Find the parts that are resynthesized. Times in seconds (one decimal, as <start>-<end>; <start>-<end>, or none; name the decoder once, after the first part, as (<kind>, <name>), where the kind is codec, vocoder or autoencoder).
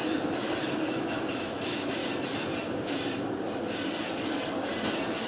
0.6-2.0 (autoencoder, DAC-VAE)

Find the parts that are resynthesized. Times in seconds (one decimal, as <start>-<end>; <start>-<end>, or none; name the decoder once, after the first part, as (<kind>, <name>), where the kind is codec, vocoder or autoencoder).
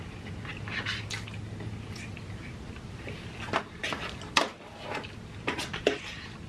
none